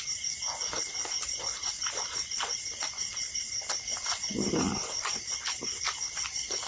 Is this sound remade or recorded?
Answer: recorded